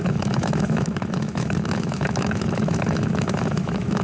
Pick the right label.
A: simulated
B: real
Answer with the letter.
A